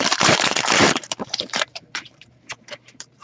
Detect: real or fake fake